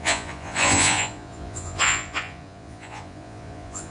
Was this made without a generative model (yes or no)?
no